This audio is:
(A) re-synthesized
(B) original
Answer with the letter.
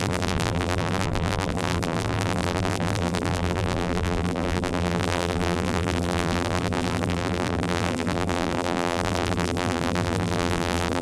A